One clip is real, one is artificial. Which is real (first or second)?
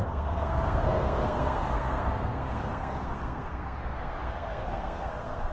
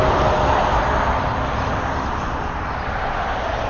second